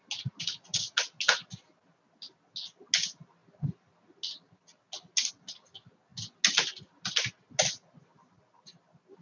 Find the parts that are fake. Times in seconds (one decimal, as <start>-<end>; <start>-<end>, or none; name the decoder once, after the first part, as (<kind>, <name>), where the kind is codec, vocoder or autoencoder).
none